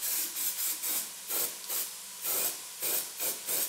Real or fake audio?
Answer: real